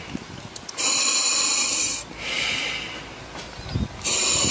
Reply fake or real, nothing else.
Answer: real